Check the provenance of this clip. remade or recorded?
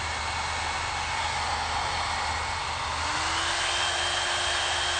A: recorded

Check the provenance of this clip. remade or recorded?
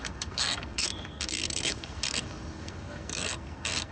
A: remade